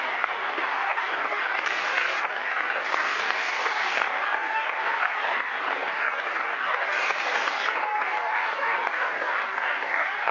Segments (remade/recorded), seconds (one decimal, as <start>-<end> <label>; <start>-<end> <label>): 0.0-10.3 remade